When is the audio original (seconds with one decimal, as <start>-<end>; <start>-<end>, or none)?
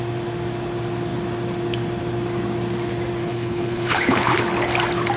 0.0-3.2; 4.4-5.2